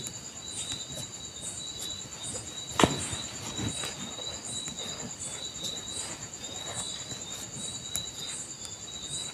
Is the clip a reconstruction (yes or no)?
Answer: no